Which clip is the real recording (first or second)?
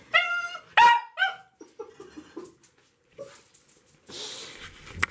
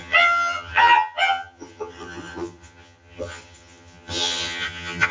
first